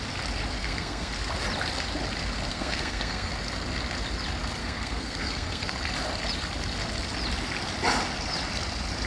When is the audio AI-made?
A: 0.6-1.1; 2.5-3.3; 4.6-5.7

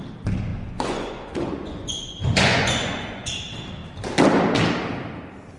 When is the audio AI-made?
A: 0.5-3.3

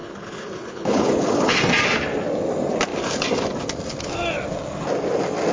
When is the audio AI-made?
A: 0.0-1.6